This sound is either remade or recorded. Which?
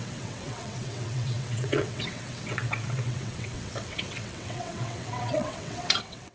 remade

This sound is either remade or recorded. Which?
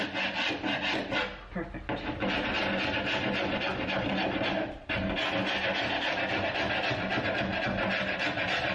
recorded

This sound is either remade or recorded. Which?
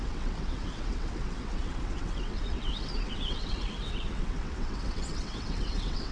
remade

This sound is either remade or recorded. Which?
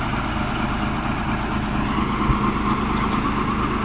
recorded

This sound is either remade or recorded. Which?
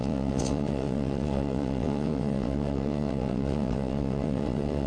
remade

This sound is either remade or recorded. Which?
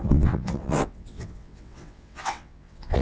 remade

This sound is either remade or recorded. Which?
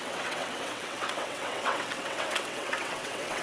remade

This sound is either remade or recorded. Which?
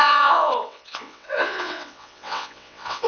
remade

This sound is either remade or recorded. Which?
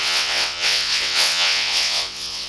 remade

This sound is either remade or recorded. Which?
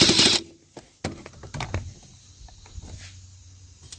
recorded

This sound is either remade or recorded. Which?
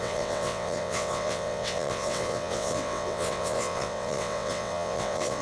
remade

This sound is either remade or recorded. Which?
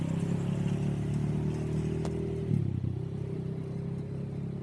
recorded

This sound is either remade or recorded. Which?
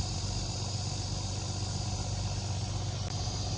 recorded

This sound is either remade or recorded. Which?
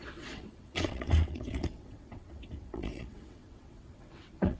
remade